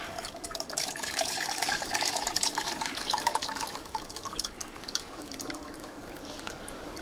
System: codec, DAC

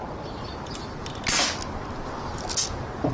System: none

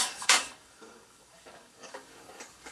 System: codec, DAC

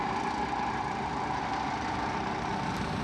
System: none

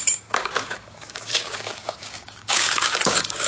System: codec, DAC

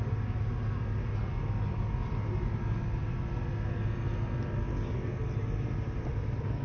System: none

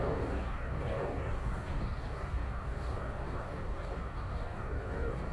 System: codec, DAC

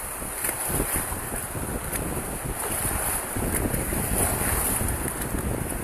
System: none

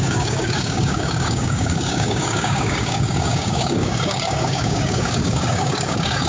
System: codec, DAC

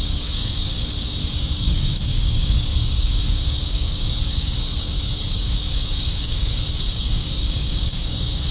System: codec, DAC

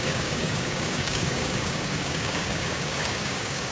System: codec, DAC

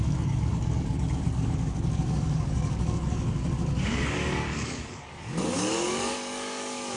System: codec, DAC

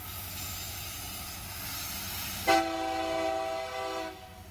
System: none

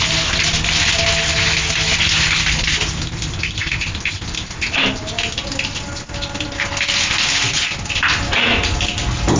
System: none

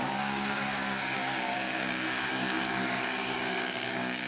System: codec, DAC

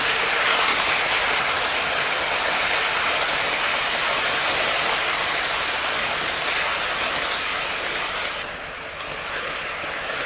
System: none